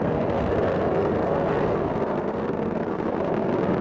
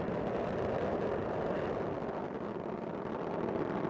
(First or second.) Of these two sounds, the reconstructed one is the first